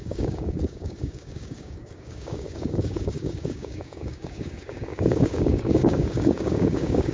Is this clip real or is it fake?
fake